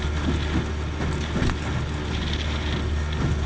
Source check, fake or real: real